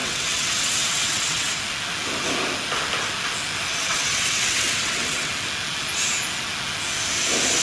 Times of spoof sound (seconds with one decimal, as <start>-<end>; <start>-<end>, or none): 0.0-1.6; 3.7-5.3